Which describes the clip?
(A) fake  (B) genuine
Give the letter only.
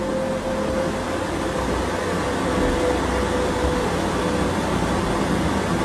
B